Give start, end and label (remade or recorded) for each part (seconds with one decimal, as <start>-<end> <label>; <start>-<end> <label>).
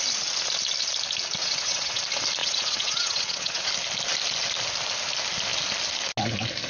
0.0-1.4 recorded; 1.4-2.0 remade; 2.0-2.4 recorded; 2.4-3.7 remade; 3.7-6.7 recorded